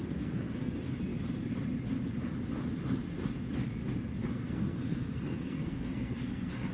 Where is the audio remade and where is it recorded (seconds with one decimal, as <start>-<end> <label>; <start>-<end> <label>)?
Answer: 0.0-0.7 remade; 0.7-4.2 recorded; 4.2-6.7 remade

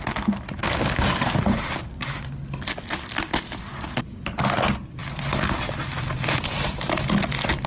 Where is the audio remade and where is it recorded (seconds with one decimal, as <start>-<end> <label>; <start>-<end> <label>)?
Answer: 0.0-7.7 recorded

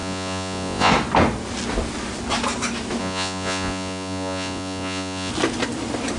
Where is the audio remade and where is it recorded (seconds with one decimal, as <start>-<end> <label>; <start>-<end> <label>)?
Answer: 0.0-0.9 remade; 0.9-3.0 recorded; 3.0-5.3 remade; 5.3-6.2 recorded

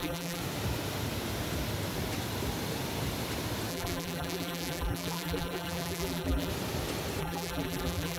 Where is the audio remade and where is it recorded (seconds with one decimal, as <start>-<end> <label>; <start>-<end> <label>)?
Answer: 0.0-0.4 remade; 0.4-3.7 recorded; 3.7-6.5 remade; 6.5-7.2 recorded; 7.2-8.2 remade

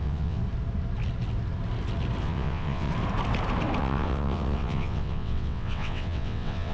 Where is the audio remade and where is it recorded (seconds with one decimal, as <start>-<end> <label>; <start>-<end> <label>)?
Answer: 0.0-0.4 remade; 0.4-2.2 recorded; 2.2-2.9 remade; 2.9-3.8 recorded; 3.8-6.7 remade